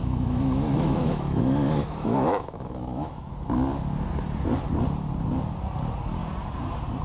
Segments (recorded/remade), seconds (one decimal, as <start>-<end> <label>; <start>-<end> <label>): 0.0-3.3 remade; 3.3-7.0 recorded